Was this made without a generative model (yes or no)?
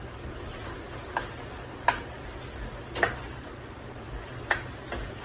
yes